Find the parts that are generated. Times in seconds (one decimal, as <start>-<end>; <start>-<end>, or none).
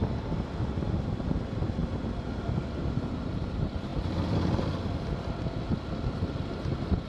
none